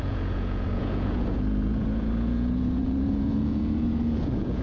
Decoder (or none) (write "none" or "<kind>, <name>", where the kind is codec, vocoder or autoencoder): vocoder, Vocos